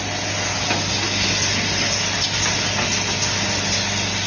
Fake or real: real